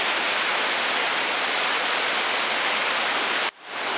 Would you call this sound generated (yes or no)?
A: no